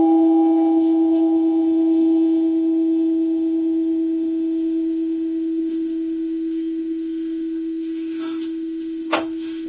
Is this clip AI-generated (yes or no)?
yes